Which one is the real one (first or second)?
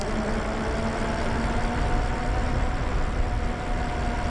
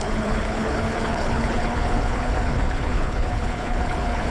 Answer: first